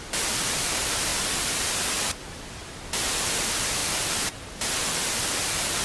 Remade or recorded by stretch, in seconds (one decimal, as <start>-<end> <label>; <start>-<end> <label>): 0.0-5.8 recorded